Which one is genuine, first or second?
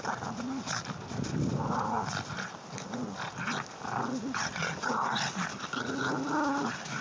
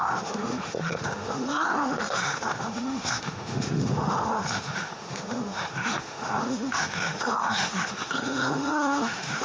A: first